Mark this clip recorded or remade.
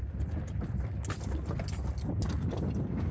recorded